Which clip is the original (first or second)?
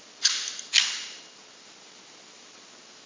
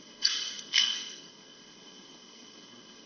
first